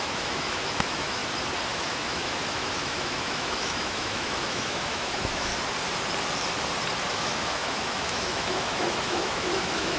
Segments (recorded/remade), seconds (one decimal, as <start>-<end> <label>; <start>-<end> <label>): 0.0-1.2 remade; 1.2-1.7 recorded; 1.7-5.5 remade; 5.5-7.1 recorded; 7.1-10.0 remade